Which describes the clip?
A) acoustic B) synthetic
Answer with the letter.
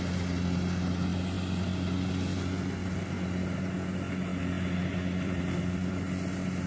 A